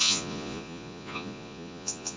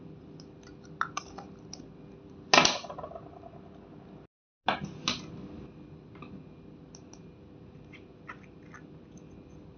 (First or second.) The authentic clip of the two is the second